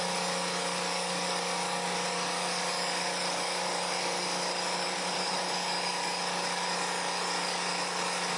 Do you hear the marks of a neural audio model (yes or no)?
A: yes